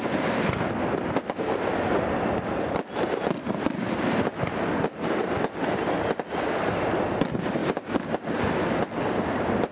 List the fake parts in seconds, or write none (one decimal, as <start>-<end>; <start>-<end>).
none